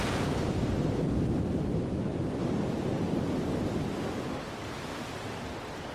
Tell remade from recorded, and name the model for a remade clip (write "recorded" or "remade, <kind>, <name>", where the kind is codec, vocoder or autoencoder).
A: recorded